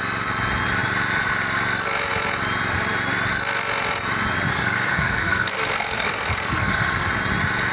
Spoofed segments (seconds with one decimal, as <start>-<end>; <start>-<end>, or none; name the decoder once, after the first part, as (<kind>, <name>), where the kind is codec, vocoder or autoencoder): 4.5-7.1 (codec, SNAC)